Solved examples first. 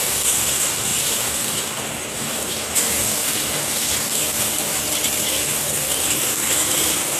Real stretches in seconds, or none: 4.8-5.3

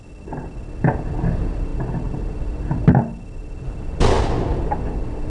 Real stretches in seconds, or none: 0.0-5.3

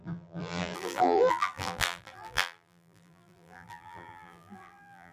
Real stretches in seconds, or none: none

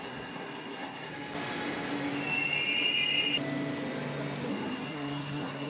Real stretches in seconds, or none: 1.1-4.5

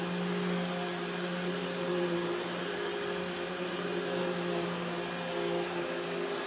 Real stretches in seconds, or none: 0.0-6.5